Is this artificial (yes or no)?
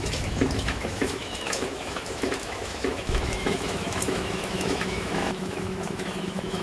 yes